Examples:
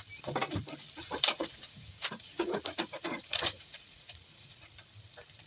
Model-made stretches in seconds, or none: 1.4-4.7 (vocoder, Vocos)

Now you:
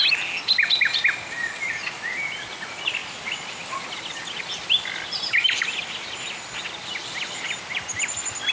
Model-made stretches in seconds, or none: none

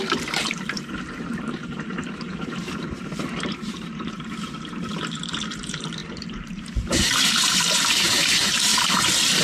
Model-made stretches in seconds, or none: 0.0-8.7 (vocoder, BigVGAN v2)

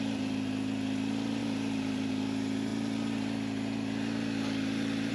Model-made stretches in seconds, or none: 1.4-2.1 (vocoder, BigVGAN v2)

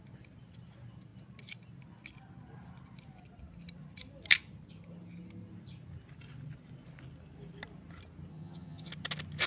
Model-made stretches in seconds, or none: 8.3-8.9 (vocoder, HiFi-GAN)